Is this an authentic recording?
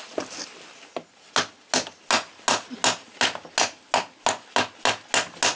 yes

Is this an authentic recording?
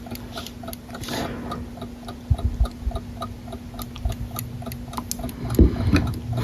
yes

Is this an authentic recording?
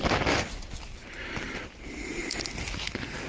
yes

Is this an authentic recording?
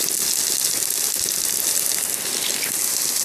yes